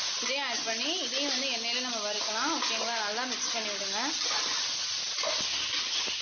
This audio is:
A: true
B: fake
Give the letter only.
A